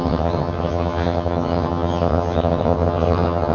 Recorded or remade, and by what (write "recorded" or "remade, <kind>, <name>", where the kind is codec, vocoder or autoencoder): remade, vocoder, HiFi-GAN